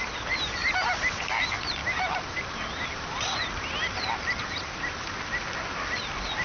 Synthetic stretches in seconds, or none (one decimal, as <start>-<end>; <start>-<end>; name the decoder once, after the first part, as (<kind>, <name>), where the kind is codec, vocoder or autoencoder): none